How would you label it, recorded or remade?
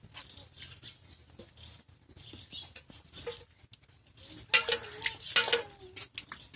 recorded